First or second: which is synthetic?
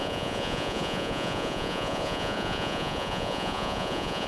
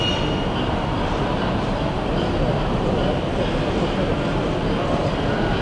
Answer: first